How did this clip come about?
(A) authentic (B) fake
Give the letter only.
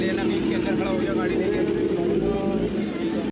A